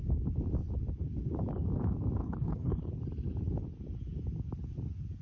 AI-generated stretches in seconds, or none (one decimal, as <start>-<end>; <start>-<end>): 2.2-2.9